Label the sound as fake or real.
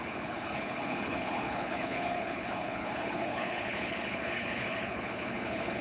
fake